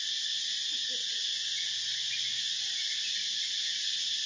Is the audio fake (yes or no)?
no